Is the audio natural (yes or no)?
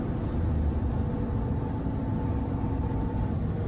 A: yes